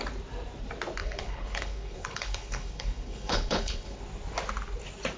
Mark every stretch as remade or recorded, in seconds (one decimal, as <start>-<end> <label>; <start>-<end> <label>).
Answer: 0.0-1.0 recorded; 1.0-4.0 remade; 4.0-5.2 recorded